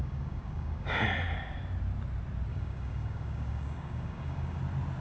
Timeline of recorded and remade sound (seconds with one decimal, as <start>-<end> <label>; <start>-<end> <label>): 0.0-1.0 remade; 1.0-2.5 recorded; 2.5-4.6 remade; 4.6-5.0 recorded